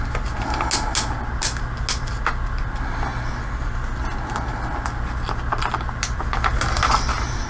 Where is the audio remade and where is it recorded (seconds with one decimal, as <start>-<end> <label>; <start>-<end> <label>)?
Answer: 0.0-7.5 recorded